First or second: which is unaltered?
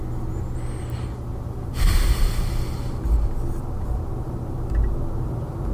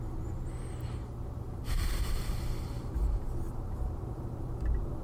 first